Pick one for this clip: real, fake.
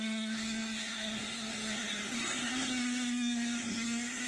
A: fake